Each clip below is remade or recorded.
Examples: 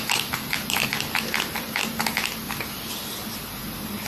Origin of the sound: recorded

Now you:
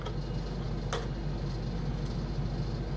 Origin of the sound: recorded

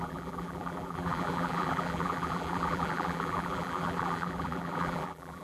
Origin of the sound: remade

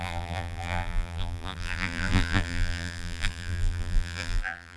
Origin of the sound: remade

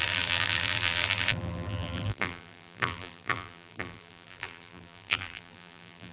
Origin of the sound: remade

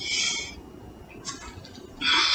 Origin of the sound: recorded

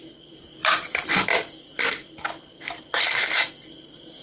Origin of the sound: remade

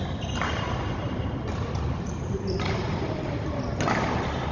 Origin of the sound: recorded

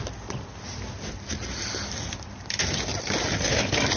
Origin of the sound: remade